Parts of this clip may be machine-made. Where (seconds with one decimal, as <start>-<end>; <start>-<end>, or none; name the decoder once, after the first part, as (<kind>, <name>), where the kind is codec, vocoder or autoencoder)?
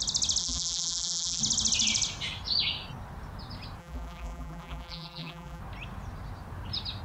0.4-1.4 (vocoder, BigVGAN v2); 3.8-5.6